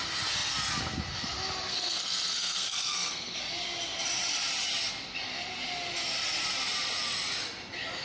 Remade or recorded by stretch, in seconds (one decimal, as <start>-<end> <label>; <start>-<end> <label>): 0.0-1.7 recorded; 1.7-3.4 remade; 3.4-8.0 recorded